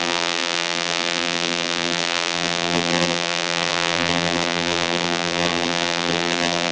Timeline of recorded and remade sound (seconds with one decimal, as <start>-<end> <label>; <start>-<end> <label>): 0.0-6.7 remade